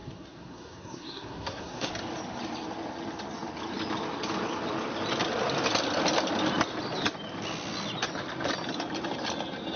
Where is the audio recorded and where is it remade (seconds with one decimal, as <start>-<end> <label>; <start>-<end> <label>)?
0.0-1.9 remade; 1.9-9.8 recorded